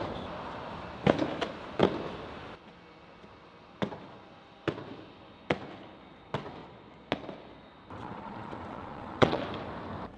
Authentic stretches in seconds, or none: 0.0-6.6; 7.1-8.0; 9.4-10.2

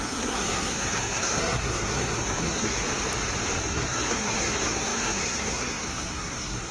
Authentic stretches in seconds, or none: 2.8-3.6

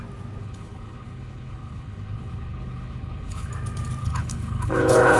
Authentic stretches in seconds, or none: 0.0-0.4; 3.5-4.0

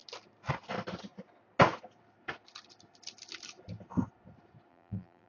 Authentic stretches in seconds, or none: 0.0-4.7

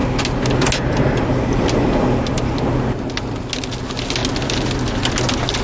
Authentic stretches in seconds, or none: 0.0-5.6

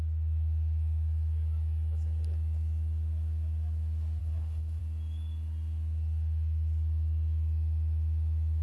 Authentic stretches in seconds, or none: 0.0-4.2; 4.8-8.6